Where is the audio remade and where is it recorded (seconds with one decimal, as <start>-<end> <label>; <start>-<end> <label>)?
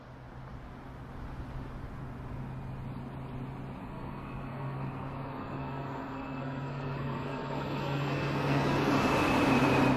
0.0-3.8 recorded; 3.8-8.9 remade; 8.9-10.0 recorded